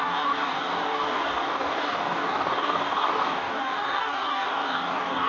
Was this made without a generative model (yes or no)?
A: no